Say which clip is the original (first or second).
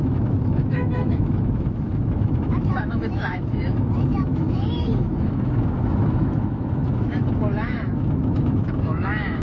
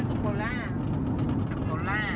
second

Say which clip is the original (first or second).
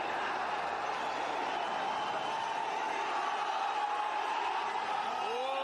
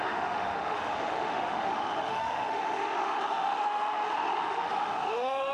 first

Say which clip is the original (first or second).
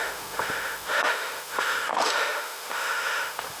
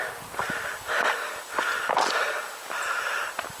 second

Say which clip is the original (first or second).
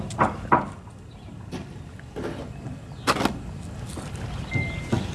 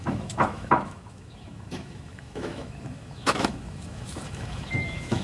first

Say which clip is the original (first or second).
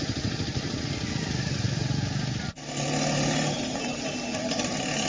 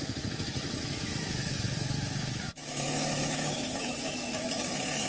first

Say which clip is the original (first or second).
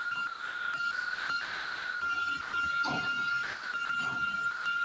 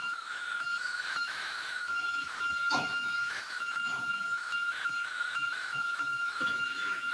first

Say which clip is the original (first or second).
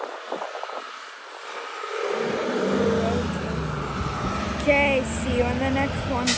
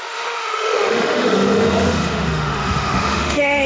first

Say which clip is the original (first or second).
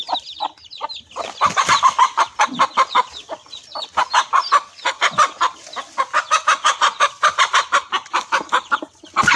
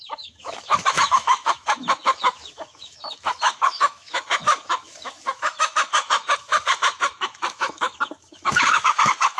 first